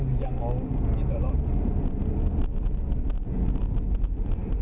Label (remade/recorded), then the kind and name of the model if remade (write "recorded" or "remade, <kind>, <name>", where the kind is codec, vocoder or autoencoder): recorded